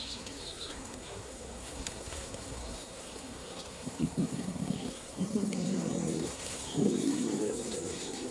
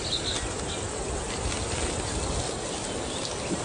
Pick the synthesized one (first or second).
first